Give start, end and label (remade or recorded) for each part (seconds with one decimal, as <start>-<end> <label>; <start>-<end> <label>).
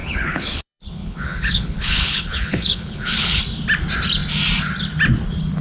0.0-3.4 remade; 3.4-5.6 recorded